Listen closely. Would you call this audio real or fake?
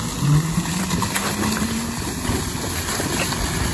real